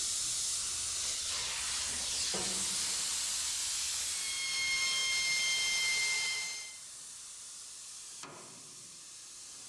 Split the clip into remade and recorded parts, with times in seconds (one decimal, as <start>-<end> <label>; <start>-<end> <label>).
0.0-9.7 recorded